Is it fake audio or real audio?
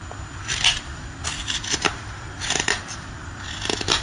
real